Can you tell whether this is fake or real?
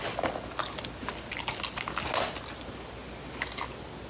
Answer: real